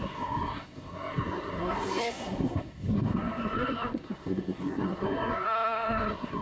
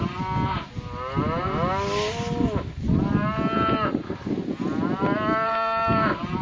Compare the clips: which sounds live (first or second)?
second